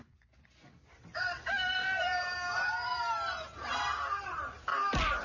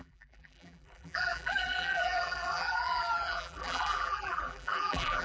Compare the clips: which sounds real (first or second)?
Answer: first